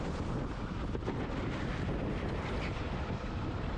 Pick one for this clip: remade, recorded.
recorded